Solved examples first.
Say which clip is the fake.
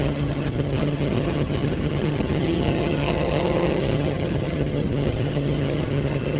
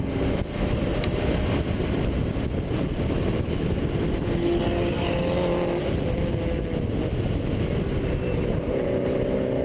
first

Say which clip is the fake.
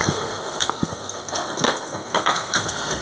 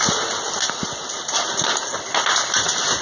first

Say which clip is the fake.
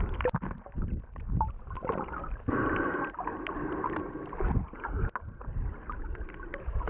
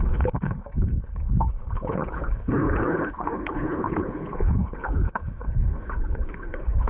second